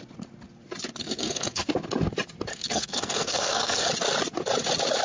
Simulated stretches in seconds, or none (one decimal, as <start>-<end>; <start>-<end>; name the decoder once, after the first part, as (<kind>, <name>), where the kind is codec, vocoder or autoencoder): 1.0-1.7 (codec, SNAC); 2.5-3.9

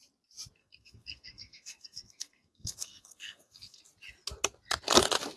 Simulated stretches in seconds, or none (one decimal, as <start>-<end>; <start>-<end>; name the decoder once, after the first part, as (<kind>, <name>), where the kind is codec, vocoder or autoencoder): 0.6-3.8 (codec, SNAC)

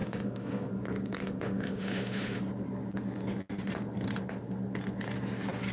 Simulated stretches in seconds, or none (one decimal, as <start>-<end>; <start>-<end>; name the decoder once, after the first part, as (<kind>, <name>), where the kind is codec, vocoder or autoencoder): 0.0-0.7 (autoencoder, DAC-VAE); 1.2-2.4

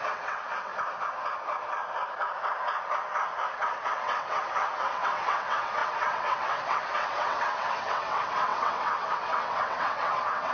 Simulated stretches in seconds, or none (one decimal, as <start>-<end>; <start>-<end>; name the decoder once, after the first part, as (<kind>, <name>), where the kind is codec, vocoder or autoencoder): 0.0-0.7 (vocoder, WaveNeXt); 3.5-10.5

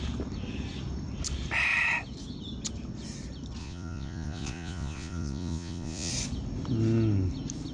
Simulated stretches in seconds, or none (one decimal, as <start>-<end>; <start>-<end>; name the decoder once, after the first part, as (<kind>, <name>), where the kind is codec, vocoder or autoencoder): 3.6-6.1 (vocoder, Vocos)

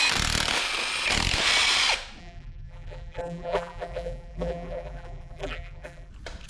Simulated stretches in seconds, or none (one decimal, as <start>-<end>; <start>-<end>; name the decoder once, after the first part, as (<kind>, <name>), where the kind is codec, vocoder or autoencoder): 2.2-6.1 (vocoder, BigVGAN v2)

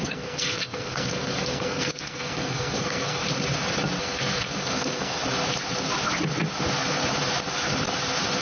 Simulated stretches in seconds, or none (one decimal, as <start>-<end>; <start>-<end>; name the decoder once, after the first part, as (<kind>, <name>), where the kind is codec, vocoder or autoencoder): 0.0-3.2 (codec, SNAC); 4.0-5.2

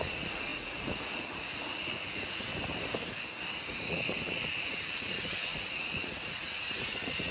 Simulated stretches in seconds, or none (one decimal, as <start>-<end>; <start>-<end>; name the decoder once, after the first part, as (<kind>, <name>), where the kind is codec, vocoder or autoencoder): 0.0-2.5 (vocoder, Vocos); 3.5-7.3